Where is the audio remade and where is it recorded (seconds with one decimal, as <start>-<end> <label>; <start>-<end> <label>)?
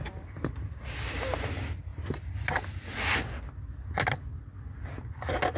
0.0-1.9 remade; 1.9-5.6 recorded